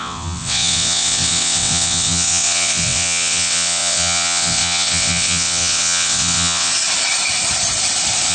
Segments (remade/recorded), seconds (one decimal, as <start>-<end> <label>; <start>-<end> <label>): 0.0-6.7 remade; 6.7-8.3 recorded